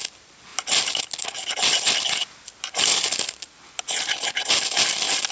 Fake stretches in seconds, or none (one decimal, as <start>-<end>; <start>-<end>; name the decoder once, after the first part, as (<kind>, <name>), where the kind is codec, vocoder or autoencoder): none